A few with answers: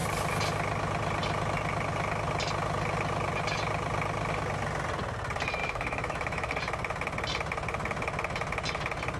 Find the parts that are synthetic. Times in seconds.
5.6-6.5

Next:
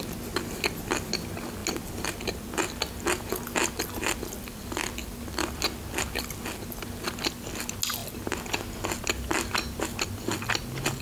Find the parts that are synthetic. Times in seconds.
none